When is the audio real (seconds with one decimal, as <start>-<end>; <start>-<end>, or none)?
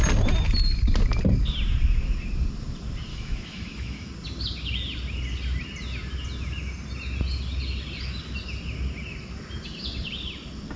0.0-3.1; 4.1-10.8